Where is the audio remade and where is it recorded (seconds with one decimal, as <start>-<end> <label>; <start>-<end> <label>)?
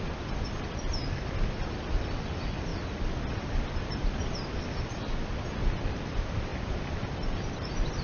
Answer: 0.0-8.0 recorded